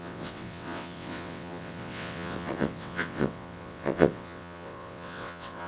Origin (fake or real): fake